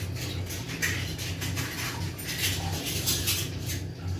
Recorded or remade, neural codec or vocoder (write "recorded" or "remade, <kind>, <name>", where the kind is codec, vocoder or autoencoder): recorded